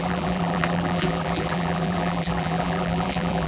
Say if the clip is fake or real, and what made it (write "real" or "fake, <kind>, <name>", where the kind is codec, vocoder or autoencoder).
fake, vocoder, BigVGAN v2